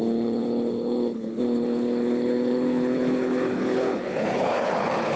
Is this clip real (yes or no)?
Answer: no